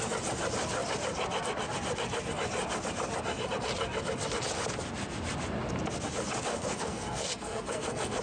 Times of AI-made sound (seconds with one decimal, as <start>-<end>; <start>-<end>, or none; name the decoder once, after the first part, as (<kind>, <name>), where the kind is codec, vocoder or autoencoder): 6.5-8.2 (codec, SNAC)